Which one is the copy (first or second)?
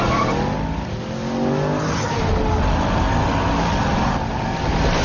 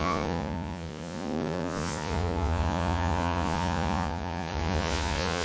second